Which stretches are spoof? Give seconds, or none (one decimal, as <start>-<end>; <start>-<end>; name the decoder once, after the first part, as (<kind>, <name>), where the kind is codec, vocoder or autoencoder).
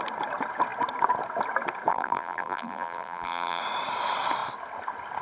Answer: 1.9-3.6 (vocoder, BigVGAN v2)